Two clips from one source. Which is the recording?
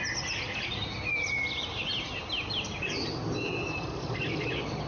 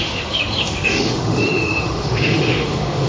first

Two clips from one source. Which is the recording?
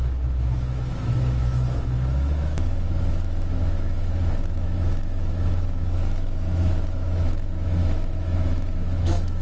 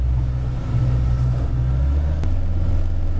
second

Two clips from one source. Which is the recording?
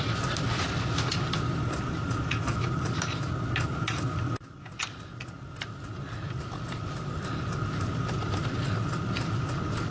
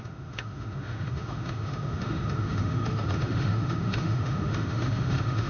first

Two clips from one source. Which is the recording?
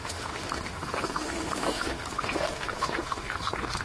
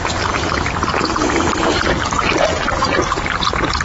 second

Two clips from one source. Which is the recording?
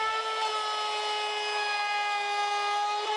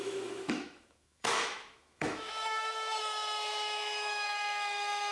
first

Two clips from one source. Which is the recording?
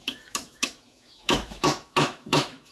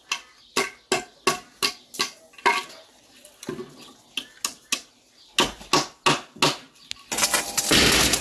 second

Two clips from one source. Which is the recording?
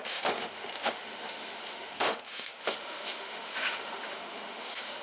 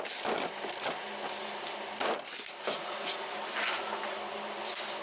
second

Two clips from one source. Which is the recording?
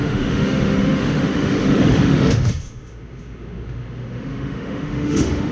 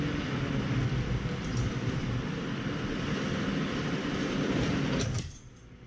second